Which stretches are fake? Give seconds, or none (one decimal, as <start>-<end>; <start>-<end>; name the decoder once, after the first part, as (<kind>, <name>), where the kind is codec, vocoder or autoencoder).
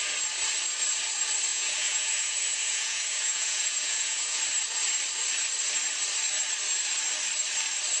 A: 1.5-4.4 (vocoder, Vocos)